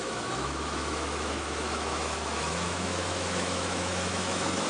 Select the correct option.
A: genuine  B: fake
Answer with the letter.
B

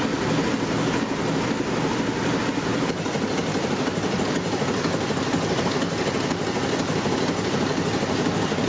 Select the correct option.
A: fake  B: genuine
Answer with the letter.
B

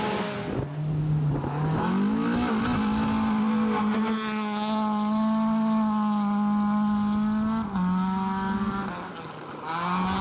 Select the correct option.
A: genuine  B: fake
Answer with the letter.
A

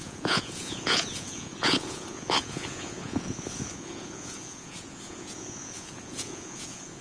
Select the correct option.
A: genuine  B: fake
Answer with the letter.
B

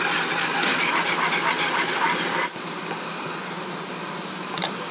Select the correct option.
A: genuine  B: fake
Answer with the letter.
A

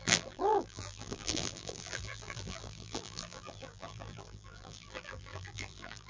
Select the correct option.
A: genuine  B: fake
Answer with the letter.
B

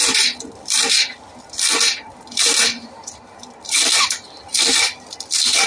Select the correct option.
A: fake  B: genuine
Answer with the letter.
A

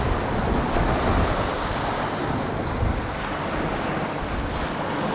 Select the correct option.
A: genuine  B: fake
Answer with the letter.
A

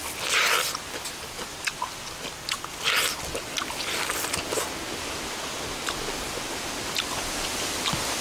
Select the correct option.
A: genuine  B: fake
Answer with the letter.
A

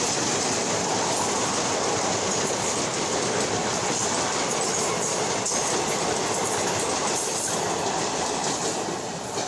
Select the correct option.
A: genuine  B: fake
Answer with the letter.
A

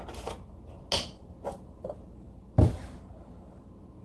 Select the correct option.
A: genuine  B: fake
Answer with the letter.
A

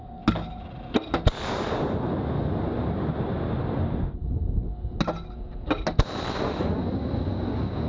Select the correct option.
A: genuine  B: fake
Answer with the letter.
A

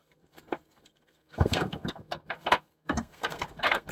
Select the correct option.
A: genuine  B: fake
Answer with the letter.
B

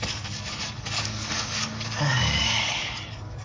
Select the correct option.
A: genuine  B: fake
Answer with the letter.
B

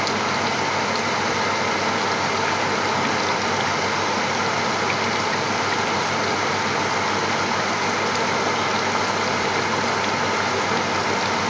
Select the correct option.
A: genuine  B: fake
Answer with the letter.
A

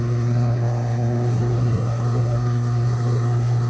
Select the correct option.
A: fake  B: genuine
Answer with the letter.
A